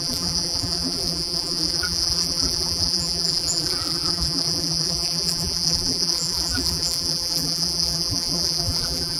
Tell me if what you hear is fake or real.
fake